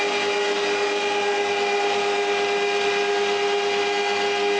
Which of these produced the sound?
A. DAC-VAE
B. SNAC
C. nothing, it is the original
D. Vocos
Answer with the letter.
C